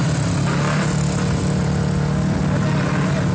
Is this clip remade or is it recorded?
recorded